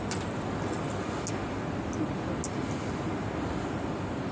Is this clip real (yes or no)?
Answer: yes